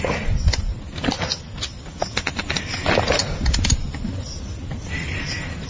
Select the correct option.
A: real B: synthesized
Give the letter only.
A